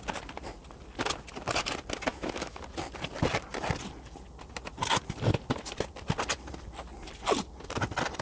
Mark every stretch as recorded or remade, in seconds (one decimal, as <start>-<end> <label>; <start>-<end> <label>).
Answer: 0.0-2.1 recorded; 2.1-2.6 remade; 2.6-8.2 recorded